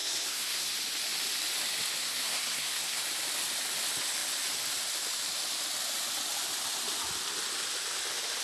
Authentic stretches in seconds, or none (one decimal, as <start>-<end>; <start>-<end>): 0.7-2.0; 3.0-8.4